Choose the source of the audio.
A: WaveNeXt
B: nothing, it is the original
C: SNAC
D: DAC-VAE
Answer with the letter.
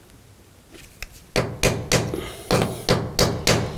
B